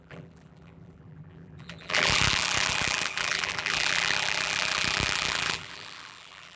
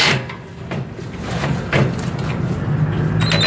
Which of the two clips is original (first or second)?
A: second